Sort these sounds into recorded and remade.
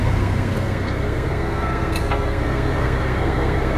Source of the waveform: remade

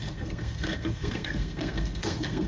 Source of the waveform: remade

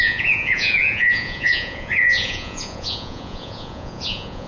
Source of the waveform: remade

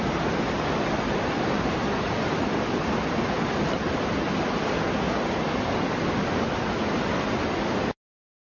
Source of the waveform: recorded